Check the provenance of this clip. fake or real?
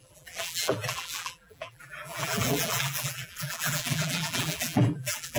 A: fake